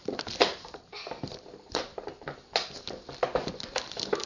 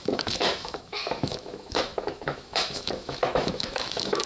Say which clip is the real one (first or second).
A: first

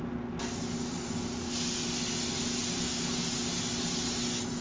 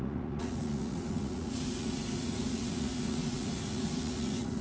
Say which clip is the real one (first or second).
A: first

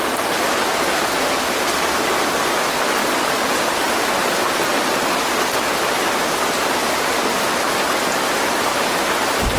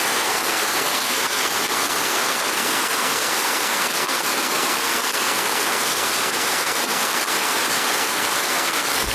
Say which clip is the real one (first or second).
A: first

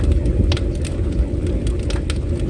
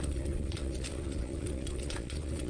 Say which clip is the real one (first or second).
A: first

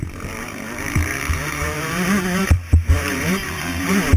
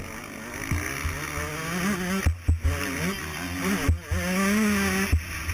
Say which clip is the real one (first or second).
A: second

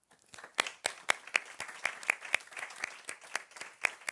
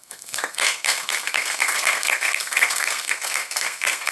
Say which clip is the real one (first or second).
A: first